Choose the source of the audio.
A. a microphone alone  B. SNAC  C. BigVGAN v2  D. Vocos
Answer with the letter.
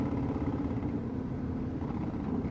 A